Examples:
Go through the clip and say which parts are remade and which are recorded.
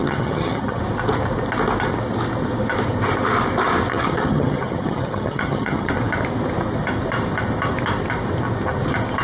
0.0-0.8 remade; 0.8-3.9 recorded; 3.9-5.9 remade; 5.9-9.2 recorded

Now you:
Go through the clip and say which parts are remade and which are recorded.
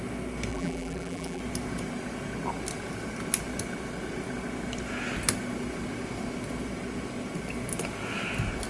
0.0-0.5 recorded; 0.5-1.4 remade; 1.4-8.7 recorded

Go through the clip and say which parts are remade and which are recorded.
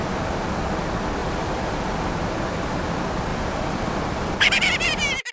0.0-1.2 recorded; 1.2-2.1 remade; 2.1-3.3 recorded; 3.3-5.3 remade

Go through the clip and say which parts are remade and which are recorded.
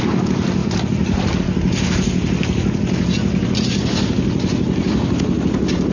0.0-5.9 recorded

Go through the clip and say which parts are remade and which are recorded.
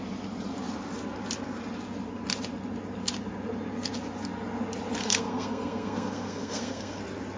0.0-5.0 recorded; 5.0-7.0 remade; 7.0-7.4 recorded